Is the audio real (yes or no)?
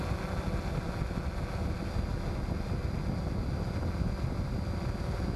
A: yes